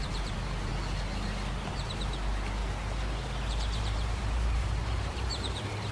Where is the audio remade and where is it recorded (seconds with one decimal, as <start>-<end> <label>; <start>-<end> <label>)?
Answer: 0.0-0.7 remade; 0.7-1.7 recorded; 1.7-2.6 remade; 2.6-3.5 recorded; 3.5-5.9 remade